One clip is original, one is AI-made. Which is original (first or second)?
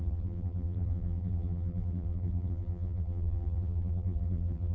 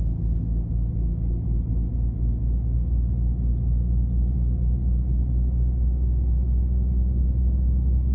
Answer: second